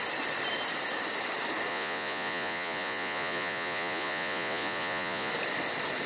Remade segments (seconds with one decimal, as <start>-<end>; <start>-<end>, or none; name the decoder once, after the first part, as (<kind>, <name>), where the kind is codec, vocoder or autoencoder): 1.7-5.3 (vocoder, Vocos)